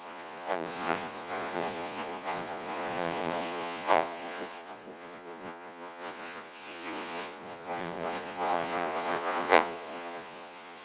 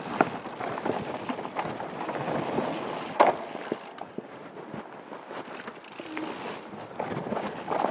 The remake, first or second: first